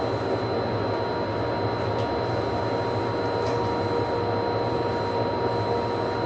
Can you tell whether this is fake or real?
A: real